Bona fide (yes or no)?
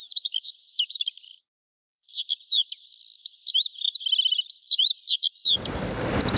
no